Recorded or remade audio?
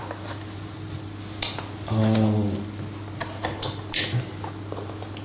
recorded